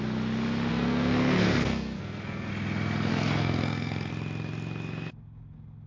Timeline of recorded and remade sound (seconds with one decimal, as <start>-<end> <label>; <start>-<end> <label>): 0.0-0.7 recorded; 0.7-2.5 remade; 2.5-3.1 recorded; 3.1-4.1 remade; 4.1-5.9 recorded